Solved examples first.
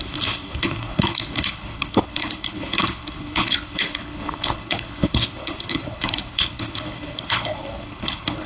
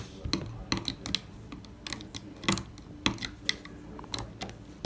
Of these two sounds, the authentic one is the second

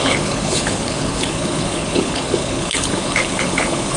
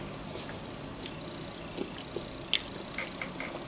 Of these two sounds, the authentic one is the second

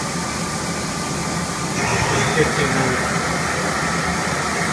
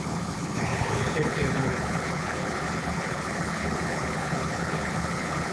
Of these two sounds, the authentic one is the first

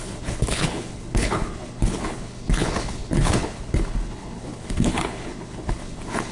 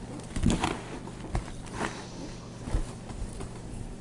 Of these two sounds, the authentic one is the second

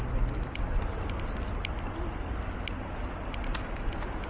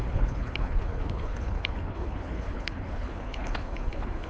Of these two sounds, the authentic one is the first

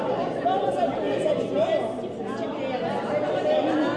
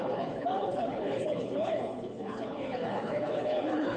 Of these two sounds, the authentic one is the first